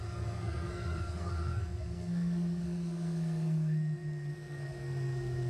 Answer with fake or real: fake